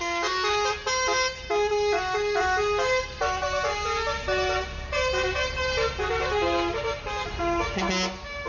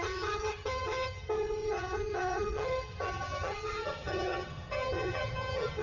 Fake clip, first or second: second